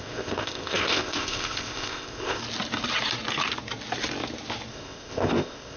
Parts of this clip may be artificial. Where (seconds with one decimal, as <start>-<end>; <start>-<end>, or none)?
0.0-2.4; 4.7-5.8